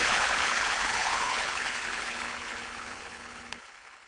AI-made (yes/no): yes